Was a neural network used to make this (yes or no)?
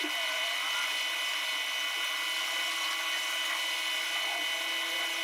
no